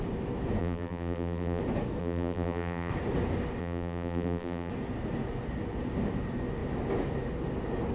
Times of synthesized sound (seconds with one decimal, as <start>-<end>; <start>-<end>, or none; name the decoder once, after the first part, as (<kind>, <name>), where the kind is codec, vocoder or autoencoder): 0.6-1.6 (vocoder, BigVGAN v2); 2.0-2.9; 3.6-4.7